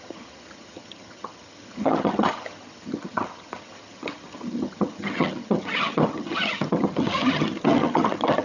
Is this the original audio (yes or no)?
no